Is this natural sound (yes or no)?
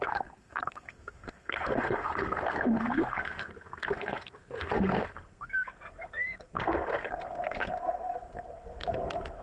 no